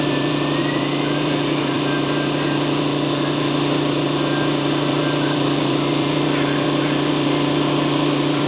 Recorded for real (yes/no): no